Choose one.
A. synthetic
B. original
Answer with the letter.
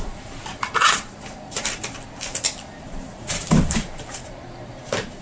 A